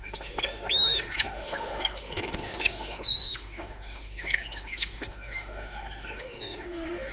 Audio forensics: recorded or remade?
remade